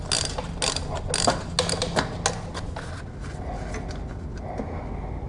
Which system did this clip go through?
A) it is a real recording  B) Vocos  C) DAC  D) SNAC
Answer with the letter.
A